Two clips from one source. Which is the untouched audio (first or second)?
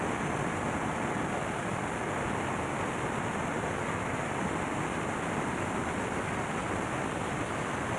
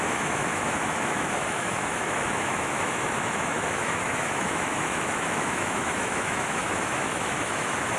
first